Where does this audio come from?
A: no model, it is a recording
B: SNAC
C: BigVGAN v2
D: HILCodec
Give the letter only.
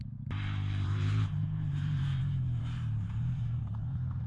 C